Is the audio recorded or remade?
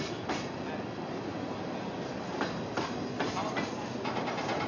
recorded